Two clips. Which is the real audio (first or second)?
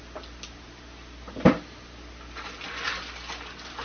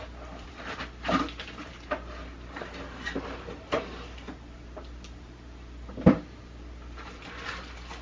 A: first